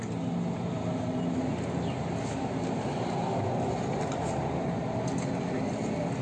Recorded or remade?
recorded